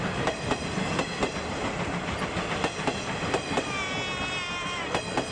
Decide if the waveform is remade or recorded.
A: recorded